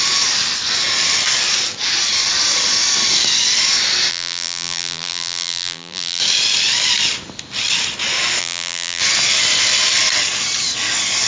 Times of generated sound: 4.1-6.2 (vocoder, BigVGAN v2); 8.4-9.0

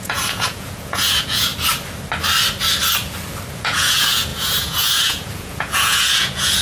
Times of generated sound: 0.0-1.5 (vocoder, Vocos); 3.5-6.6

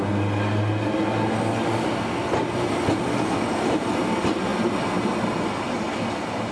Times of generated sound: none

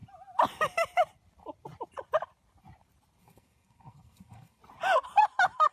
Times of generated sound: 3.2-4.6 (codec, SNAC)

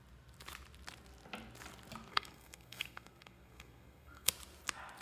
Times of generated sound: 2.1-4.3 (codec, SNAC)

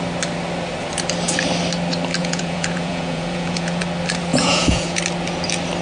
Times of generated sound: 2.2-3.8 (vocoder, Vocos); 4.3-5.0

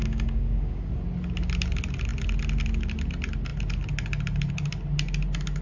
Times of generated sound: 0.0-0.9 (codec, DAC)

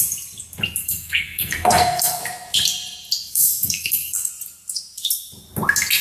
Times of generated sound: 0.8-2.2 (codec, SNAC); 3.3-4.3